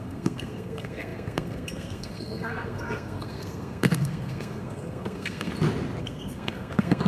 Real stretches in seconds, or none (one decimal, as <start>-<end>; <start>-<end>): 5.5-6.0